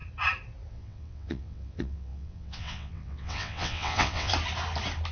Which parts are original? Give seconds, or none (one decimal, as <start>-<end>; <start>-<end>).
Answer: 0.0-0.7; 4.3-5.1

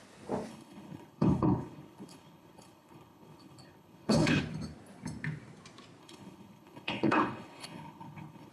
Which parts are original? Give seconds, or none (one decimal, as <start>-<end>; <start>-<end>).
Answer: 0.0-0.5; 4.4-6.0

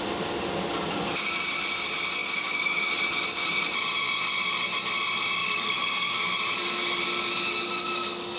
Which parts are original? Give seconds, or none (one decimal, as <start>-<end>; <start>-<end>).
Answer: 0.0-2.2; 2.9-5.4; 6.2-8.4

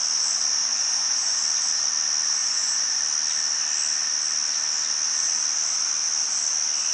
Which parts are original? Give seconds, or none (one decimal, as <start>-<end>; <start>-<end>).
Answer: 0.0-0.7; 1.4-2.4; 3.0-6.9

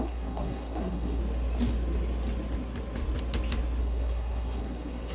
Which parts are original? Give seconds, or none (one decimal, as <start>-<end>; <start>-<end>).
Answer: 1.2-3.8

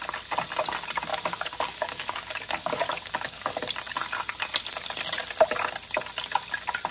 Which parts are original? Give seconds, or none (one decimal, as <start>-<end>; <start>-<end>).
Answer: 0.0-1.1; 3.6-6.9

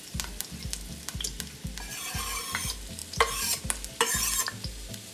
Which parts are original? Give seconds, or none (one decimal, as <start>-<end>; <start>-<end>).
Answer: 0.0-3.0; 3.6-5.1